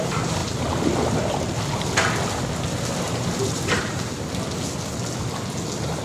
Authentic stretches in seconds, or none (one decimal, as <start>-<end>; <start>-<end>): 0.4-3.0; 4.1-6.0